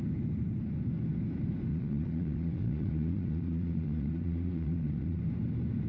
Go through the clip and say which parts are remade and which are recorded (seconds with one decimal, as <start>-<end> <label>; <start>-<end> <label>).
0.0-1.7 recorded; 1.7-5.2 remade; 5.2-5.9 recorded